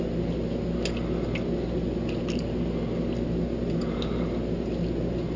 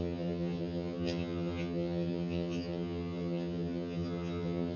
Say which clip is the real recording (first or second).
first